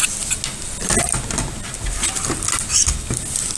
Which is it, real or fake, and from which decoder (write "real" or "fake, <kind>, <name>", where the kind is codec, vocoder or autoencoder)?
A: real